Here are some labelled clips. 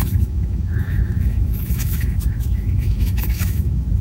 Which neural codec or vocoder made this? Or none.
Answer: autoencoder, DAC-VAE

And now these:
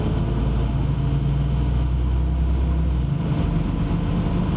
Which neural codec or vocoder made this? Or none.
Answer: none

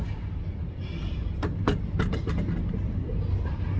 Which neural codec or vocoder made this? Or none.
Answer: none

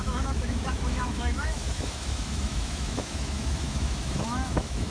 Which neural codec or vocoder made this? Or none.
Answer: autoencoder, DAC-VAE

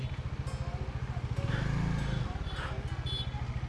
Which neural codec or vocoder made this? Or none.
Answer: none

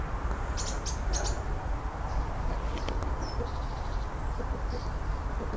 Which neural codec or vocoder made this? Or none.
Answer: none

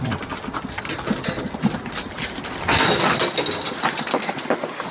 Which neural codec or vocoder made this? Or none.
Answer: none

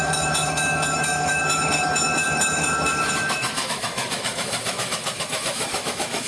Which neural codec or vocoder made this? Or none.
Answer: autoencoder, DAC-VAE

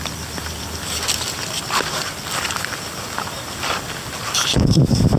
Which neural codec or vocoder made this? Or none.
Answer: none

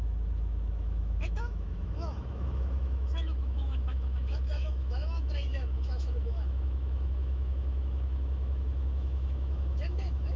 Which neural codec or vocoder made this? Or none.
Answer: autoencoder, DAC-VAE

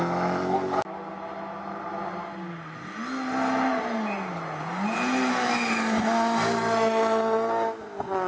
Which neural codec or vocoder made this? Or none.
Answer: none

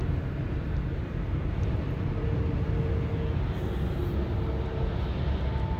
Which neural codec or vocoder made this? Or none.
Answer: none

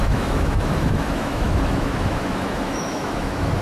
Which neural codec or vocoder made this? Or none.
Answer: autoencoder, DAC-VAE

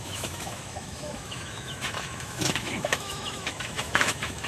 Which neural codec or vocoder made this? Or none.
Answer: autoencoder, DAC-VAE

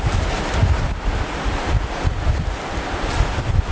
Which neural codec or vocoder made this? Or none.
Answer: none